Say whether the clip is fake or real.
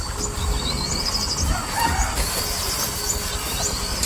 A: real